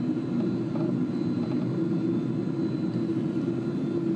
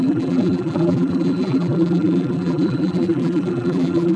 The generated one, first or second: second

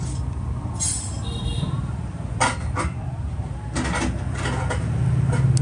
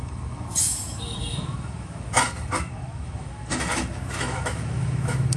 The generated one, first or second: second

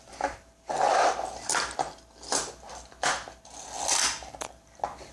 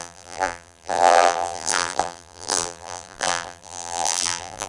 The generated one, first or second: second